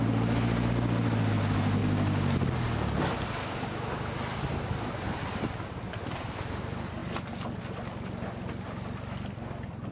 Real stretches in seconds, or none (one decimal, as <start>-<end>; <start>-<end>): 0.0-9.9